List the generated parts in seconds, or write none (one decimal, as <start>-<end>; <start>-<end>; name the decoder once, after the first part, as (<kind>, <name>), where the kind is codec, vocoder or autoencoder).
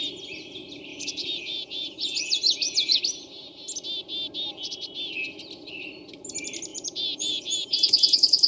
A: 0.9-3.0 (vocoder, Vocos); 6.7-8.5